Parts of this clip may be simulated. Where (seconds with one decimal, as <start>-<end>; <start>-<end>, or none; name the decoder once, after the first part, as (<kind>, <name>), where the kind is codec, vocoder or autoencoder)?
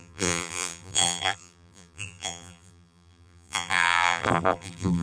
0.0-5.0 (vocoder, BigVGAN v2)